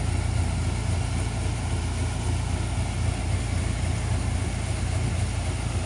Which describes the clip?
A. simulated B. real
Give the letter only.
B